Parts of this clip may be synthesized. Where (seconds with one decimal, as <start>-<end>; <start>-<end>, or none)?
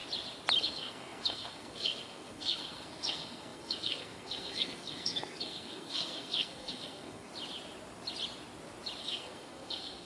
0.6-7.3; 9.0-10.1